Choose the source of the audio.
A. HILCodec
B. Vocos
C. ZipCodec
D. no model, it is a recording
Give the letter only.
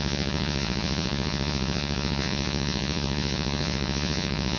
B